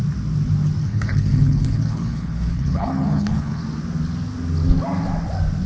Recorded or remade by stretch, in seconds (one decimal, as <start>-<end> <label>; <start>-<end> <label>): 0.0-0.8 recorded; 0.8-3.6 remade; 3.6-5.7 recorded